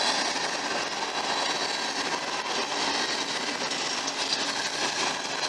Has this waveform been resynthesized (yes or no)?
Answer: no